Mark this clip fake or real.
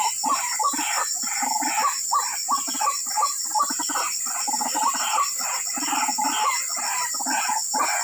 real